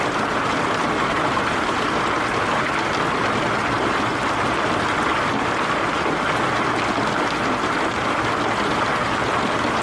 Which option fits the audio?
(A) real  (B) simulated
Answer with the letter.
A